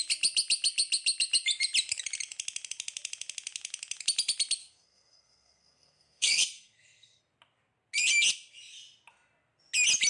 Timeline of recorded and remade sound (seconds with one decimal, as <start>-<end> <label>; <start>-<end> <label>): 0.0-4.6 recorded; 4.6-7.2 remade; 7.2-10.1 recorded